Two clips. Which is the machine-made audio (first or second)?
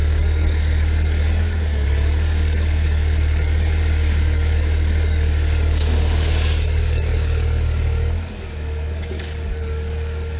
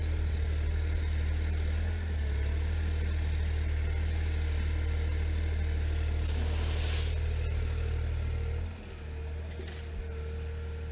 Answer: first